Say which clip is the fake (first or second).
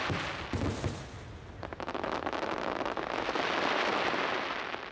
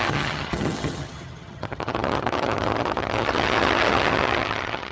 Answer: second